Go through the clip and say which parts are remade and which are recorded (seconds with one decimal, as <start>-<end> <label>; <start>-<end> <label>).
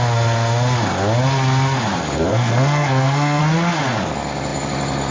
0.0-2.3 recorded; 2.3-3.4 remade; 3.4-5.1 recorded